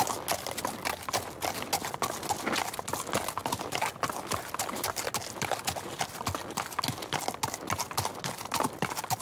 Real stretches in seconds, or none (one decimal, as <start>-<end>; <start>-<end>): 0.0-9.2